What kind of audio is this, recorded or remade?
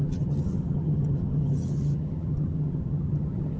remade